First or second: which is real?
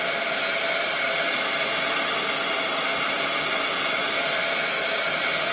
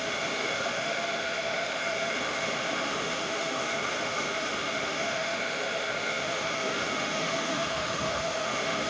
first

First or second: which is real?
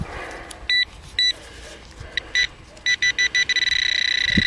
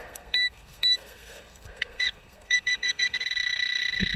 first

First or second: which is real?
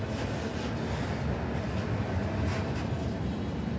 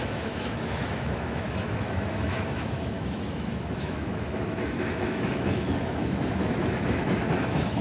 first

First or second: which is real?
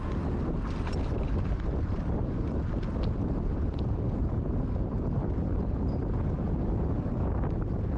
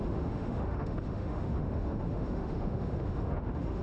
first